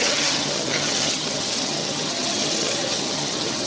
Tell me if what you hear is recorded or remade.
remade